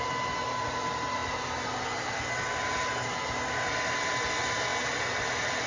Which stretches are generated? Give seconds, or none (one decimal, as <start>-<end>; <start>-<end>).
none